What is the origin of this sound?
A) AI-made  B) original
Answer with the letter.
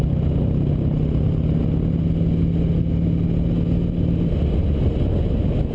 B